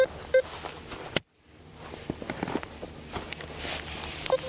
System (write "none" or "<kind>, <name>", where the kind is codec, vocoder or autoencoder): none